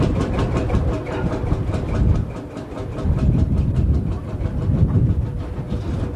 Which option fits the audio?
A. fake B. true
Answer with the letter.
B